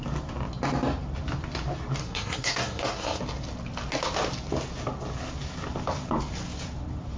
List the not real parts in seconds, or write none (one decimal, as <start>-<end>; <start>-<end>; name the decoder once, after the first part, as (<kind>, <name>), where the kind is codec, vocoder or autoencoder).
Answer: 2.0-3.2 (codec, SNAC)